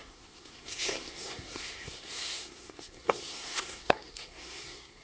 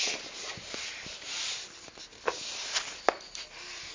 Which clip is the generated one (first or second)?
first